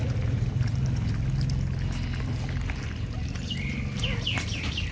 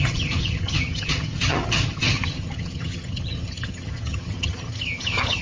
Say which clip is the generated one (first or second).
second